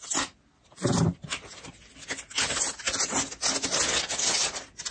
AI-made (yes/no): no